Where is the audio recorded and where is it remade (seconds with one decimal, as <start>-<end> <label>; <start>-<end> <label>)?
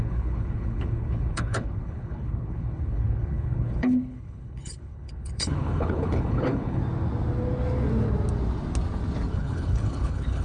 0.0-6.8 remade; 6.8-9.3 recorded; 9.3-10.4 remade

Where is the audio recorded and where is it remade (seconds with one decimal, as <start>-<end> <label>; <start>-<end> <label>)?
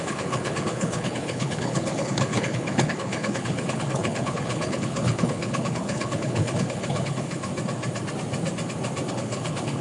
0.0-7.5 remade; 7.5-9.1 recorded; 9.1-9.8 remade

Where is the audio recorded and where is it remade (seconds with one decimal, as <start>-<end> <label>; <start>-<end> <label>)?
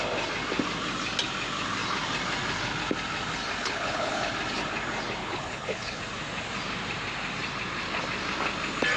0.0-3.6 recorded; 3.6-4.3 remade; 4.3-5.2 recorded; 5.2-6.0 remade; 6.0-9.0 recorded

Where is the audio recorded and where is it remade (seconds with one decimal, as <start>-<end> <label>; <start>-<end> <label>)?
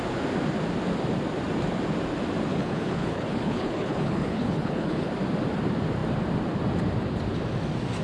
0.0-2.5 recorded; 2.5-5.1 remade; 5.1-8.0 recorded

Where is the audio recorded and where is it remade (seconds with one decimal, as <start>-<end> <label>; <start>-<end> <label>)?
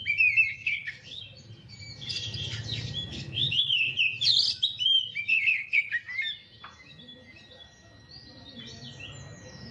0.0-0.6 recorded; 0.6-1.2 remade; 1.2-3.1 recorded; 3.1-3.9 remade; 3.9-5.3 recorded; 5.3-5.9 remade; 5.9-9.7 recorded